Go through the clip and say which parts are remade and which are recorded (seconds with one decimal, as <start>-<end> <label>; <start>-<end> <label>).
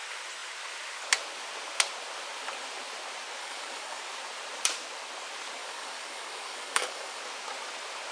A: 0.0-3.4 recorded; 3.4-4.0 remade; 4.0-5.6 recorded; 5.6-7.2 remade; 7.2-8.1 recorded